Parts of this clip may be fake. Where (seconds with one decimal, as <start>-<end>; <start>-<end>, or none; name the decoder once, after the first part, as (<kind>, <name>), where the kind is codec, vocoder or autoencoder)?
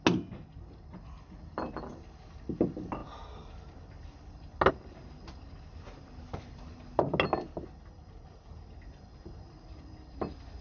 none